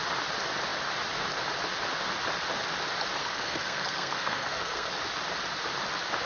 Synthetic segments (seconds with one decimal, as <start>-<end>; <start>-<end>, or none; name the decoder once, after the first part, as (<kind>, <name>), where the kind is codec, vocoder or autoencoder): 3.2-5.0 (codec, SNAC)